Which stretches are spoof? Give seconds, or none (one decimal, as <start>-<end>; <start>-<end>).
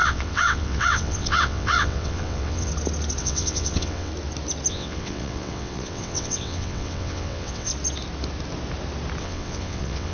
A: 0.0-2.7; 3.2-4.1; 4.7-7.7; 9.2-10.1